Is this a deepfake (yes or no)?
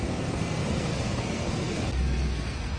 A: yes